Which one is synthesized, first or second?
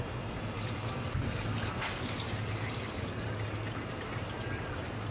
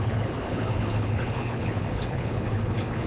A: second